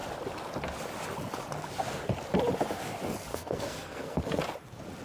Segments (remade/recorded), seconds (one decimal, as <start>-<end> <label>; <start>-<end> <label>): 0.0-3.3 recorded; 3.3-4.4 remade; 4.4-5.0 recorded